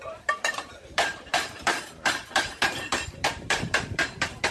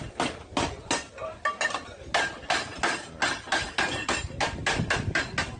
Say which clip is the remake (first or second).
first